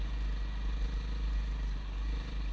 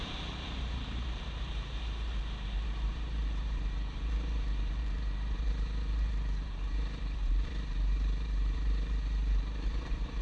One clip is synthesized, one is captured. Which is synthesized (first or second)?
second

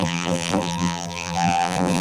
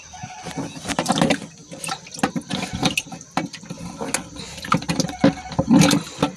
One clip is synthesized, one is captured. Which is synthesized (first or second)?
first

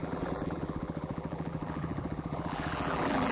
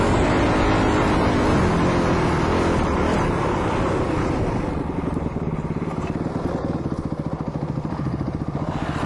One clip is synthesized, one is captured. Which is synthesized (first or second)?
first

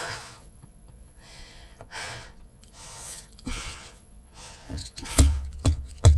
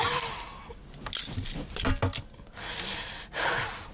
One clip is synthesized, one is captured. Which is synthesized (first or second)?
first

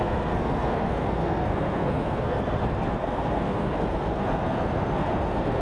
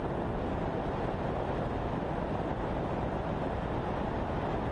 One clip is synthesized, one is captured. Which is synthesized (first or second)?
first